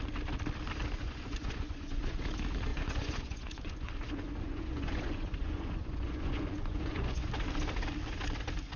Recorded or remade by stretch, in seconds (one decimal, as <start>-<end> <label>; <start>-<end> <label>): 0.0-1.0 recorded; 1.0-2.2 remade; 2.2-2.7 recorded; 2.7-7.3 remade; 7.3-8.8 recorded